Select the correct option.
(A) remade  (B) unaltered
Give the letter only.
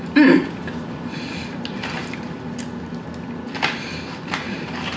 B